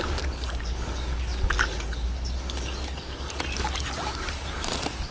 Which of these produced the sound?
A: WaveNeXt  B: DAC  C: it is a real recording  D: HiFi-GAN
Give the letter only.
B